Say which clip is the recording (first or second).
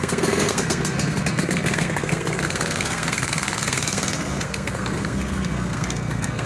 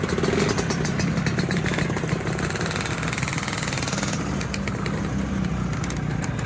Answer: second